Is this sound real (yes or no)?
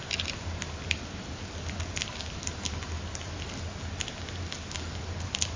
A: yes